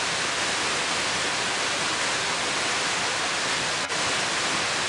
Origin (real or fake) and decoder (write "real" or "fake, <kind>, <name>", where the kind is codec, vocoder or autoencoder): real